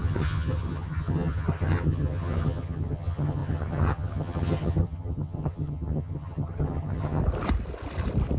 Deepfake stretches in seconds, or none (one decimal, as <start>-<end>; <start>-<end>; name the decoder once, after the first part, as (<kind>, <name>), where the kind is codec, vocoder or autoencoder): 0.0-7.2 (vocoder, HiFi-GAN)